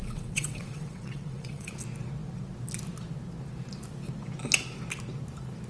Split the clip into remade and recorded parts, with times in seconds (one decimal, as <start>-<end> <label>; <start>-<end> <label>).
0.0-1.7 remade; 1.7-5.7 recorded